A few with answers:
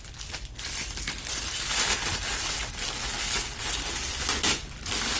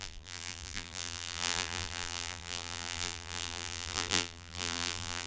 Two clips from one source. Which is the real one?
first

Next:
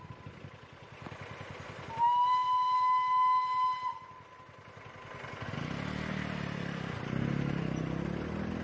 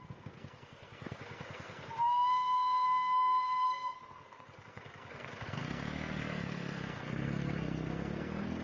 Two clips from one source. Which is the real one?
first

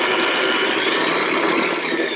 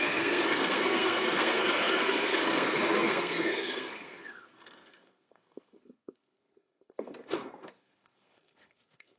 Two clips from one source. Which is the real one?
first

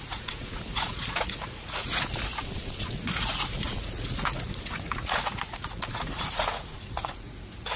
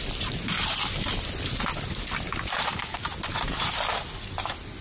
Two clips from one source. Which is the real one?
second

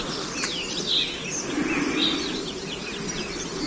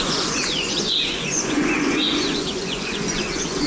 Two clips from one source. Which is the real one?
first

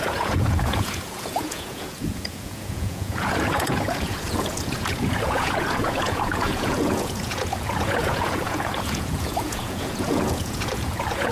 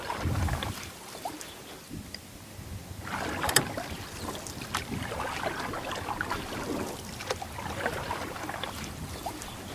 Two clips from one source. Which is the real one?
second